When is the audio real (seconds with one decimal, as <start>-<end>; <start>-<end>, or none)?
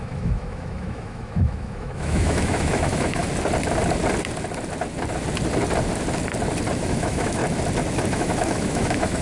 3.2-6.7; 7.4-8.1